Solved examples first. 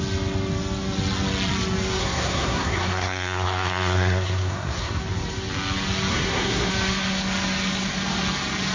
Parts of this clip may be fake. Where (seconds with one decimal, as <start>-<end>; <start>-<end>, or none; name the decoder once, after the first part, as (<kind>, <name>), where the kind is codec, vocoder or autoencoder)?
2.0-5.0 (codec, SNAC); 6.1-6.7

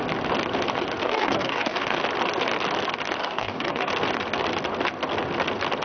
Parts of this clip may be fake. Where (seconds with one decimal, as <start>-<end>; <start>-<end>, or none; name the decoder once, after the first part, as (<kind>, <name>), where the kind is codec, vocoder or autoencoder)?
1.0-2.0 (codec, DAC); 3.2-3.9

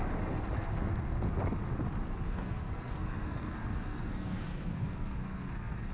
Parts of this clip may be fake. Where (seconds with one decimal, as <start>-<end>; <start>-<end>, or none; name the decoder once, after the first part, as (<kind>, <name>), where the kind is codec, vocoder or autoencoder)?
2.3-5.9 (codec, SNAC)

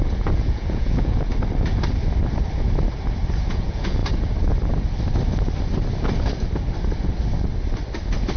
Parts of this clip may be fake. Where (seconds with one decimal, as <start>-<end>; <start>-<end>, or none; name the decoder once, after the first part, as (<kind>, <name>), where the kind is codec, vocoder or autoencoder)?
0.0-1.3 (vocoder, Vocos); 3.5-4.0

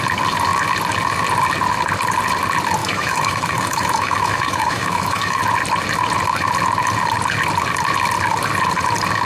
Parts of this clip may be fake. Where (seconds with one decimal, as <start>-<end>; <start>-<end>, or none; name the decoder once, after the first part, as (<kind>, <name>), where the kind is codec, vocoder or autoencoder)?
2.8-5.4 (autoencoder, DAC-VAE)

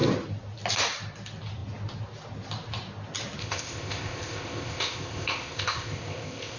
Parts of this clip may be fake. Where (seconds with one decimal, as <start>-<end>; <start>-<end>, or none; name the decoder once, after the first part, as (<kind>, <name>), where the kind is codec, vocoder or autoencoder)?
3.4-6.6 (codec, ZipCodec)

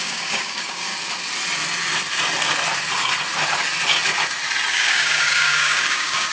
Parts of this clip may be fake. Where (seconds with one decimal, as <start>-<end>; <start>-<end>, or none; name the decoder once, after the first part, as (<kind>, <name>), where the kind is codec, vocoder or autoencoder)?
0.0-0.9 (codec, DAC); 4.7-6.3

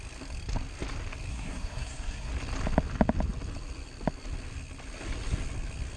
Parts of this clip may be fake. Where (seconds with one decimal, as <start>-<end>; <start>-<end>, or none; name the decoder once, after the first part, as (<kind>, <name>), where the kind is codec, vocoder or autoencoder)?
1.3-2.3 (codec, SNAC)